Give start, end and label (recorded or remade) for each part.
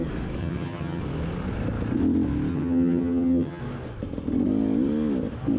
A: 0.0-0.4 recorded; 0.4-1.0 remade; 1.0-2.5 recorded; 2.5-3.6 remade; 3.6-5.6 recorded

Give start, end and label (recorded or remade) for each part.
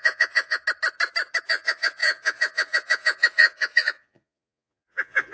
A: 0.0-0.6 remade; 0.6-1.5 recorded; 1.5-5.3 remade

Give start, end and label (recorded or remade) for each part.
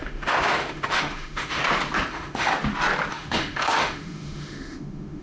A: 0.0-1.6 remade; 1.6-2.1 recorded; 2.1-2.5 remade; 2.5-3.1 recorded; 3.1-5.2 remade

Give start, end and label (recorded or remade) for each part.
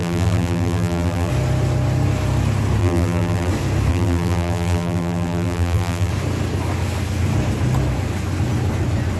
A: 0.0-1.3 remade; 1.3-2.8 recorded; 2.8-3.5 remade; 3.5-3.9 recorded; 3.9-6.1 remade; 6.1-9.2 recorded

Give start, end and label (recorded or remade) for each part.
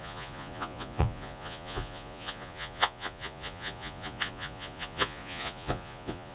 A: 0.0-6.3 remade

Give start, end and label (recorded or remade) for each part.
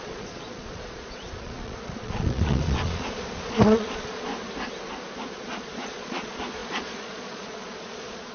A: 0.0-4.3 remade; 4.3-5.4 recorded; 5.4-8.3 remade